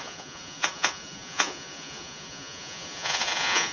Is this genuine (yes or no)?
no